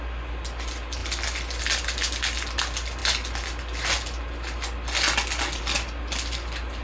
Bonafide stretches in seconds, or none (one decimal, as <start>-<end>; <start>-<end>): 0.0-6.8